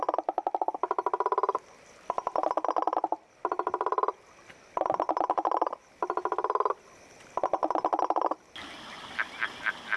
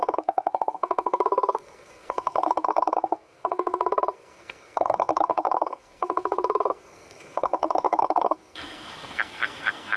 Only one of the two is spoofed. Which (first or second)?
second